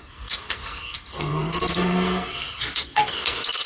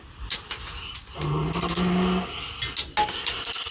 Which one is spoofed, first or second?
first